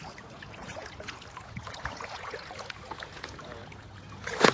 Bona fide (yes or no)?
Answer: no